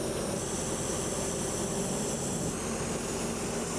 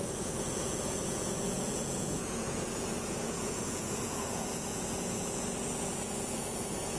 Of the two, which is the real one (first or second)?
first